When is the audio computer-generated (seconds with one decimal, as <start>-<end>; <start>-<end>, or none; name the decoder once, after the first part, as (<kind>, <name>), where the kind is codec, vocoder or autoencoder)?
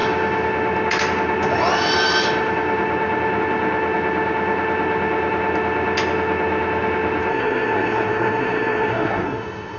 7.3-9.8 (codec, SNAC)